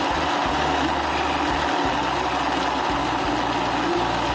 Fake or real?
real